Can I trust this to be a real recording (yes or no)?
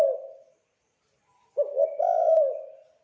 yes